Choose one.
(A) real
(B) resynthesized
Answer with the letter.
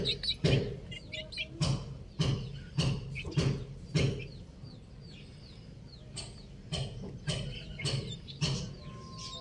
A